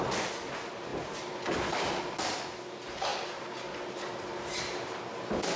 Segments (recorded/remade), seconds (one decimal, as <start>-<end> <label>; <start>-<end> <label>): 0.0-5.6 recorded